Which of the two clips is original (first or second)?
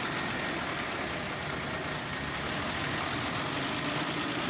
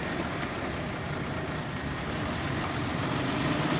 first